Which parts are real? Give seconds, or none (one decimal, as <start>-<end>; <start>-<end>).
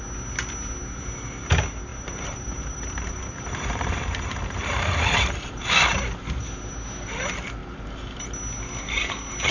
0.0-1.9; 5.7-7.6; 8.2-9.5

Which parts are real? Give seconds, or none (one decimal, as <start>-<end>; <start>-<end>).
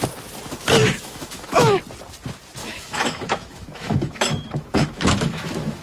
0.0-0.8; 1.8-2.6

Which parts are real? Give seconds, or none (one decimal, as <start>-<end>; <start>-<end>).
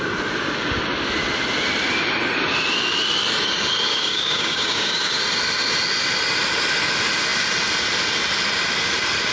0.0-3.9; 5.2-9.3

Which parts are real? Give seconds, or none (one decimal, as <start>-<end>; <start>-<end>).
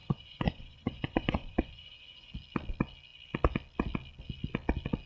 2.3-5.1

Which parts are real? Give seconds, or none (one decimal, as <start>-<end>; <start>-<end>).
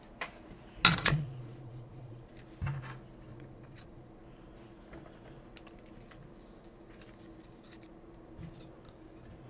0.0-0.9; 2.3-3.3; 4.2-9.5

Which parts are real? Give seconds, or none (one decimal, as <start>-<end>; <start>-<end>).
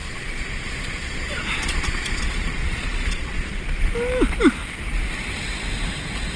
3.8-6.4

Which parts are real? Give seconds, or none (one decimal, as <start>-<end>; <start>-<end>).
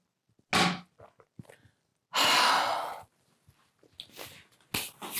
0.0-5.2